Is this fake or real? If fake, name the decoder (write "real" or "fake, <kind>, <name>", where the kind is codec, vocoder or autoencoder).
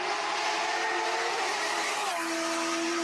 real